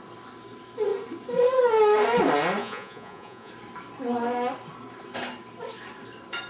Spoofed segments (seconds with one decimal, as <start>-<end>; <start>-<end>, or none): 2.6-3.5